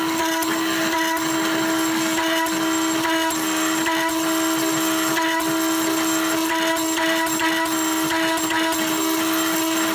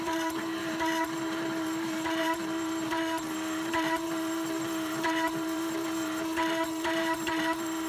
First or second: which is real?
first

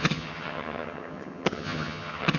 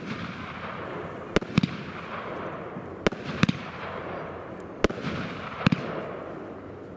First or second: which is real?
second